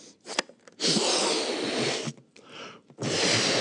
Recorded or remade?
recorded